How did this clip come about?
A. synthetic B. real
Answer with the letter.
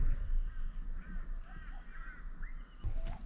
B